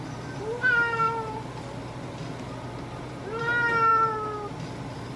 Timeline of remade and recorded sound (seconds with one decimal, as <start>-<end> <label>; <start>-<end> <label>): 0.0-5.2 recorded